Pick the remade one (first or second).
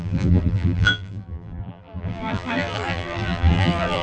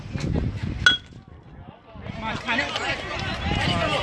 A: first